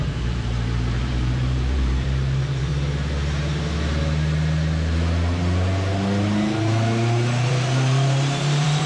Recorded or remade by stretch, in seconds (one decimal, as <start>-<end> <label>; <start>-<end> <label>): 0.0-2.7 remade; 2.7-7.5 recorded; 7.5-8.9 remade